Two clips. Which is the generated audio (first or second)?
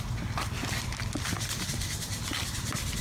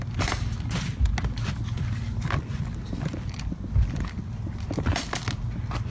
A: first